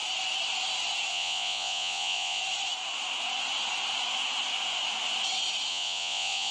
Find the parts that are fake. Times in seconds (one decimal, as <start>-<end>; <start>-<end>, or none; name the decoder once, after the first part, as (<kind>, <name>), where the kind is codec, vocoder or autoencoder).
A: 1.1-2.4 (vocoder, Vocos); 5.7-6.5